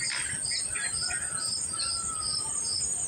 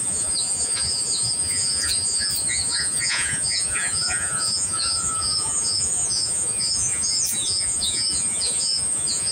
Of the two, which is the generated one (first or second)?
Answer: second